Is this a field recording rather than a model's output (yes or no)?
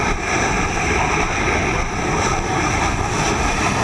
yes